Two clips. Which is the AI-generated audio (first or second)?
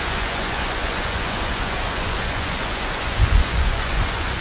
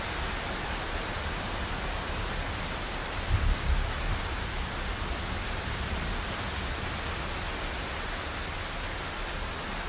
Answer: first